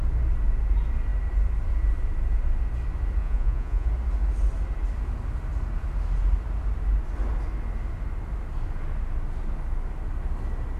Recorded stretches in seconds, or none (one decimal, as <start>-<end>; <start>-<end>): 0.0-3.2; 3.9-10.8